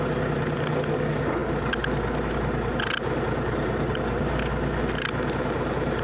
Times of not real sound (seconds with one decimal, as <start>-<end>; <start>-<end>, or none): none